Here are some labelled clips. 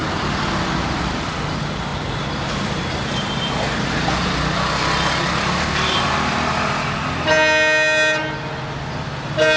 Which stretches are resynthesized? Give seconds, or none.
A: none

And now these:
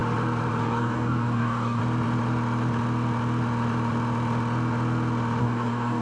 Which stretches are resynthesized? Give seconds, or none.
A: 0.6-1.8 (codec, DAC); 5.4-6.0

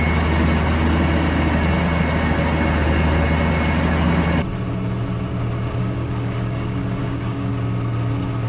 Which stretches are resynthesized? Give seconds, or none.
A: 5.8-7.5 (codec, DAC)

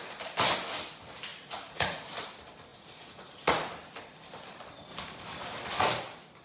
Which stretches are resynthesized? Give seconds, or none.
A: 1.3-2.0 (vocoder, Vocos); 2.7-3.7

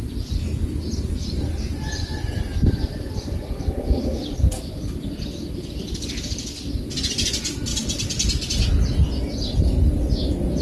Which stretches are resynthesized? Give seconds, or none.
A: none

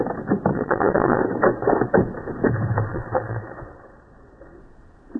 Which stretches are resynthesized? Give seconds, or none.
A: 0.5-1.2 (vocoder, WaveNeXt); 2.9-4.6